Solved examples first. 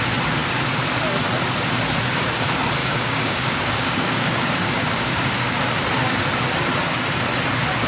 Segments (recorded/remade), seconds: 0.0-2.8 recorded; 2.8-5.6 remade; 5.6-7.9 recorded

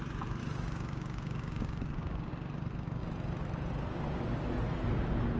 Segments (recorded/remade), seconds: 0.0-0.4 recorded; 0.4-2.3 remade; 2.3-5.4 recorded

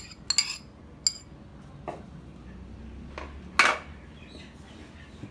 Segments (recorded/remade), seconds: 0.0-5.3 recorded

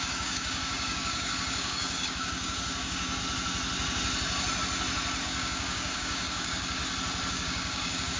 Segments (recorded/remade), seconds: 0.0-3.2 remade; 3.2-5.2 recorded; 5.2-6.8 remade; 6.8-7.3 recorded; 7.3-8.2 remade

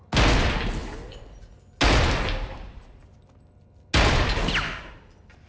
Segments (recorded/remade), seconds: 0.0-5.5 recorded

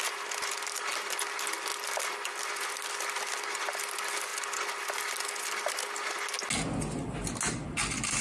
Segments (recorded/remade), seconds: 0.0-8.2 recorded

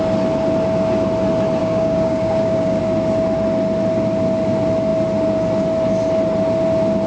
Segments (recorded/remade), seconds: 0.0-1.6 recorded; 1.6-2.8 remade; 2.8-7.1 recorded